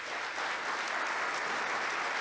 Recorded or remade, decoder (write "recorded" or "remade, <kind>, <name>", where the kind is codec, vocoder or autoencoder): recorded